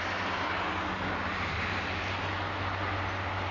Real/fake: real